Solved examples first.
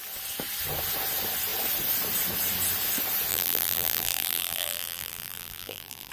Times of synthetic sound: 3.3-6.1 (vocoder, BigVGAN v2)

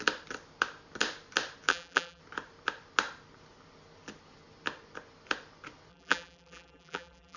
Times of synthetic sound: 1.7-2.2 (vocoder, BigVGAN v2); 5.9-7.4

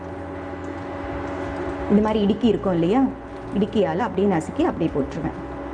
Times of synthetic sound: none